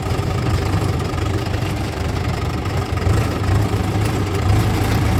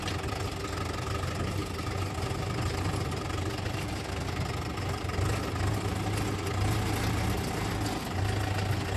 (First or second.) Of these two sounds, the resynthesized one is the first